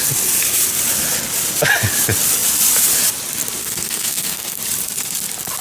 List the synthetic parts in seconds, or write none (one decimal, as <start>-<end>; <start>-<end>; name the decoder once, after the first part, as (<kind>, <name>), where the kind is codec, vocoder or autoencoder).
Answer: 3.6-4.6 (codec, SNAC)